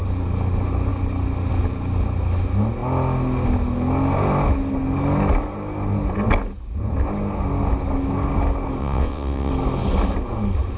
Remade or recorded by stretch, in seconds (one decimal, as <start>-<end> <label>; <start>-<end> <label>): 0.0-8.8 recorded; 8.8-9.5 remade; 9.5-10.8 recorded